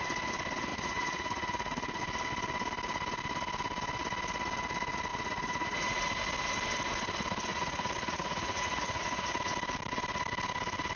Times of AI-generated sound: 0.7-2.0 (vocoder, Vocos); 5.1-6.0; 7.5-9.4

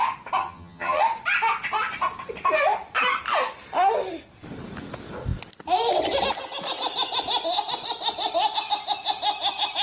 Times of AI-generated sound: 0.4-1.0 (vocoder, HiFi-GAN)

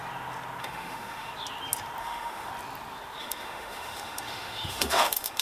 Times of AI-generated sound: 0.6-1.3 (autoencoder, DAC-VAE); 2.0-2.5; 3.2-5.4